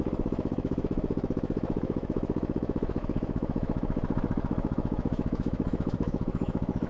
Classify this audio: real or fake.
fake